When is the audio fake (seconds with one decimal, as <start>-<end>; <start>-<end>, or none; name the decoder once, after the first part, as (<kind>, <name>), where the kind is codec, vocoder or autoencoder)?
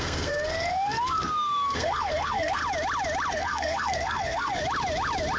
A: 0.0-2.6 (codec, SNAC); 3.3-4.6